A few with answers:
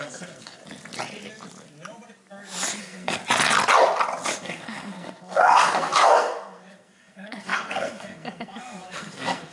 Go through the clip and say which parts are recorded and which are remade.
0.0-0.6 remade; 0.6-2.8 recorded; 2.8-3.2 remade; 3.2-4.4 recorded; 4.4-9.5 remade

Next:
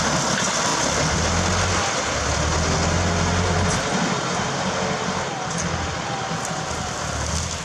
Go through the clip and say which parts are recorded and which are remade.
0.0-7.6 recorded

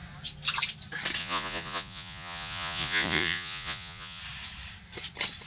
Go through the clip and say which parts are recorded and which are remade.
0.0-1.2 recorded; 1.2-4.2 remade; 4.2-5.5 recorded

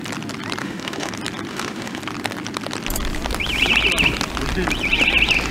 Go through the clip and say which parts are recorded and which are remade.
0.0-0.6 recorded; 0.6-1.1 remade; 1.1-1.5 recorded; 1.5-2.0 remade; 2.0-5.5 recorded